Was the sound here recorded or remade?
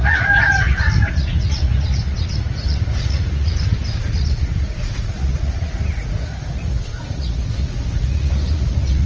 remade